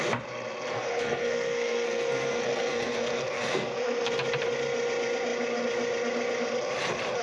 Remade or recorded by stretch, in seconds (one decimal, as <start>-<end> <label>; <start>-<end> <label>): 0.0-0.7 recorded; 0.7-4.1 remade; 4.1-7.2 recorded